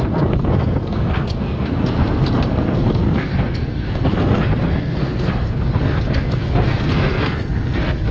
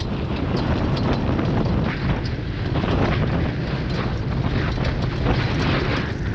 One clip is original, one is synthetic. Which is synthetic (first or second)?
first